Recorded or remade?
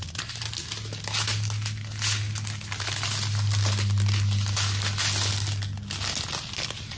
recorded